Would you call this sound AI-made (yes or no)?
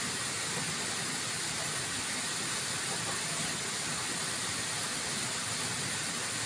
no